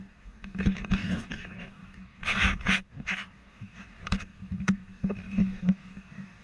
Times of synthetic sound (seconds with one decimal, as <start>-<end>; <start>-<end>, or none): 0.0-6.4